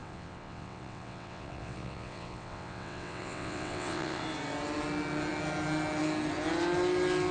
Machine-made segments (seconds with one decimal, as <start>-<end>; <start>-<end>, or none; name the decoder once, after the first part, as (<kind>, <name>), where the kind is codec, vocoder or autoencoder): 0.0-4.2 (vocoder, WaveNeXt)